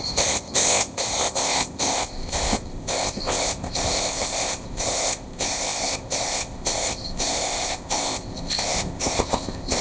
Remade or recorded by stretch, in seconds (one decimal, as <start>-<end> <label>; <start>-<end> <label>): 0.0-9.8 remade